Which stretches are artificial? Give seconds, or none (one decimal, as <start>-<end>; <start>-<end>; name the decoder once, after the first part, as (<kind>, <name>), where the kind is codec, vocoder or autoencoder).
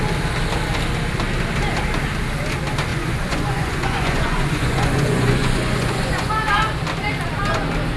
2.9-6.3 (vocoder, Vocos)